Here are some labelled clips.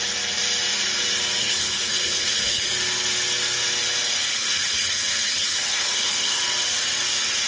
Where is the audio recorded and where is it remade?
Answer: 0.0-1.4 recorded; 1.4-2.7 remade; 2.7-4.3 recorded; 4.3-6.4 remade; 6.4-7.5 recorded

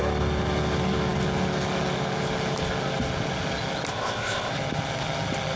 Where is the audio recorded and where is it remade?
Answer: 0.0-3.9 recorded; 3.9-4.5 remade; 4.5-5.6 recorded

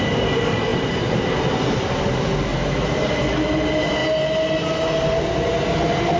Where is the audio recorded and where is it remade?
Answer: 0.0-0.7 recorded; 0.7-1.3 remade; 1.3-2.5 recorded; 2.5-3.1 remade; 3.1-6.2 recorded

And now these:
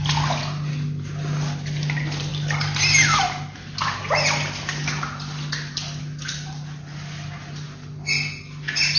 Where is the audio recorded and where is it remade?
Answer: 0.0-9.0 recorded

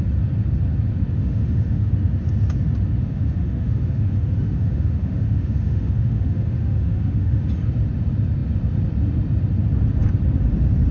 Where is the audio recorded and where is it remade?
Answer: 0.0-1.2 recorded; 1.2-1.9 remade; 1.9-3.0 recorded; 3.0-7.4 remade; 7.4-10.9 recorded

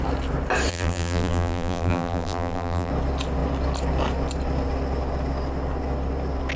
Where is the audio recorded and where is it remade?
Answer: 0.0-0.7 recorded; 0.7-2.9 remade; 2.9-6.6 recorded

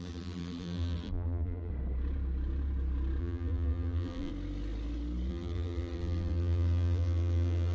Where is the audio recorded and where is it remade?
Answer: 0.0-1.7 remade; 1.7-3.2 recorded; 3.2-4.3 remade; 4.3-5.3 recorded; 5.3-7.7 remade

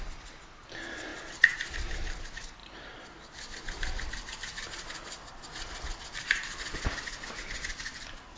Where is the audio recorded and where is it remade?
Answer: 0.0-8.4 recorded